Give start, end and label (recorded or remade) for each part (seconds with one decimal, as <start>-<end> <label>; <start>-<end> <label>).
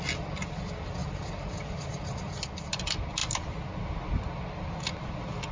0.0-1.0 recorded; 1.0-2.8 remade; 2.8-5.5 recorded